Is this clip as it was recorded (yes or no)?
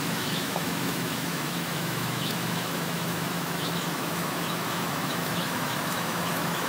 no